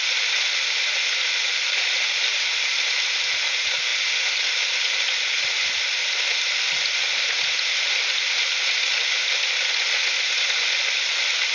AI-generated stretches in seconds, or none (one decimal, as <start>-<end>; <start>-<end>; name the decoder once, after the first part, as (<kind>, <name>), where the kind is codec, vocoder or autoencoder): none